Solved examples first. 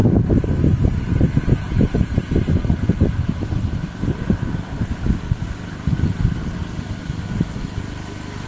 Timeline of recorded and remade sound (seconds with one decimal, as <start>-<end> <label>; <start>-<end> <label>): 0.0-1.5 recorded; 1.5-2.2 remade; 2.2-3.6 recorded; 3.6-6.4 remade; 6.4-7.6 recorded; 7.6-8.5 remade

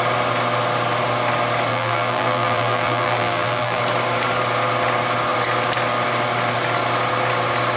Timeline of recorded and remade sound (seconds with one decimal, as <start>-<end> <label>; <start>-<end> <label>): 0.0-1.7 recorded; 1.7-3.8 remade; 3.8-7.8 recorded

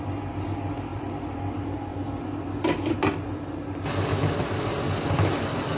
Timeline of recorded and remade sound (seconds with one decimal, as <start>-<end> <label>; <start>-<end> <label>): 0.0-0.9 recorded; 0.9-1.4 remade; 1.4-4.1 recorded; 4.1-4.8 remade; 4.8-5.8 recorded